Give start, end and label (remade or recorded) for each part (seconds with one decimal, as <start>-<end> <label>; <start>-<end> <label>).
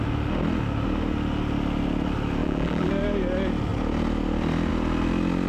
0.0-2.4 recorded; 2.4-2.9 remade; 2.9-5.5 recorded